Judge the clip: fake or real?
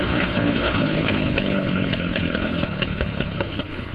fake